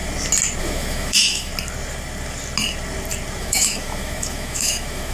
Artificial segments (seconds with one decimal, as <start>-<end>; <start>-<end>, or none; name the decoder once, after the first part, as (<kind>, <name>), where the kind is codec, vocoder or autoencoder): 0.6-1.5 (autoencoder, DAC-VAE); 3.4-5.1